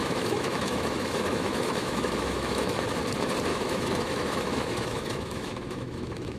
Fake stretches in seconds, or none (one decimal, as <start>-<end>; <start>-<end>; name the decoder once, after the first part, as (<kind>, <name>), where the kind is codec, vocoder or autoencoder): 0.0-3.0 (autoencoder, DAC-VAE); 3.5-6.4